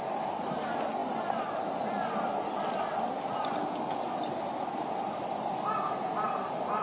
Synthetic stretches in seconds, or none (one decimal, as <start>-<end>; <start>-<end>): none